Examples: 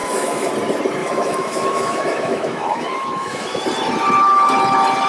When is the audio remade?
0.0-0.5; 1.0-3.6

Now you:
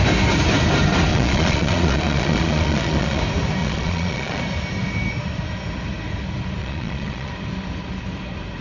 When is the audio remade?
1.1-3.2; 3.6-4.4; 6.6-7.3